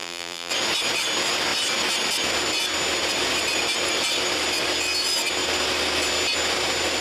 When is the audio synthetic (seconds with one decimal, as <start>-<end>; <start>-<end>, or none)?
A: 0.0-0.5